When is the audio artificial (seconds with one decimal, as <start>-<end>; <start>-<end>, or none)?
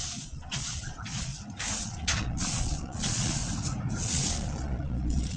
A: 0.0-1.3; 1.8-3.4; 4.0-5.4